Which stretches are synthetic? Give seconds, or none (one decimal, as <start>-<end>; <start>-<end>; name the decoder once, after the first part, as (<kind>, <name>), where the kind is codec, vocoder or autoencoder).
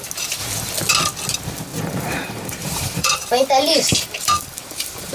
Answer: 1.7-5.1 (vocoder, BigVGAN v2)